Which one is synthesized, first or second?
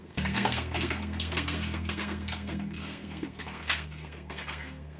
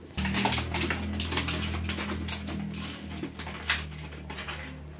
first